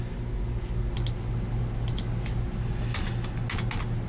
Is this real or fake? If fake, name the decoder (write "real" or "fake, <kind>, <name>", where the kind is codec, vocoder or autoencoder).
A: real